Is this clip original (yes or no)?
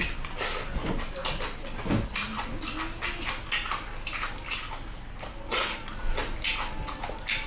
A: yes